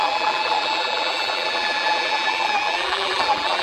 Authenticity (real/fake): fake